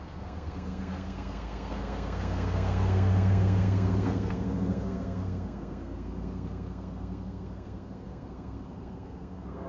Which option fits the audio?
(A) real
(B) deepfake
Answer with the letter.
B